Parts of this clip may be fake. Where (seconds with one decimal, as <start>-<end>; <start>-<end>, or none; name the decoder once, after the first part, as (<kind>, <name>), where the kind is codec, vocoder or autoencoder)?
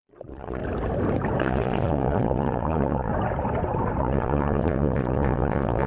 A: 0.0-0.6 (vocoder, Vocos); 1.4-3.1; 4.0-5.9